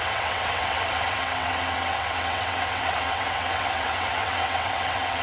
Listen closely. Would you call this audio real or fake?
fake